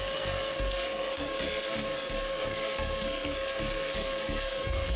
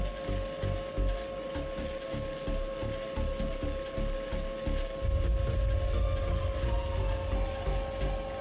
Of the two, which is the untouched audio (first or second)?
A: second